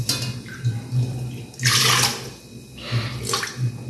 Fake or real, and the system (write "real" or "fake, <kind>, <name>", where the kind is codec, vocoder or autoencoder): real